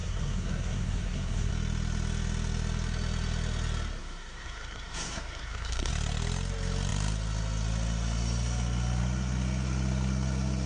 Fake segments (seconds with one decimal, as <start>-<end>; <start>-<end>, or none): 0.0-1.5; 4.0-5.9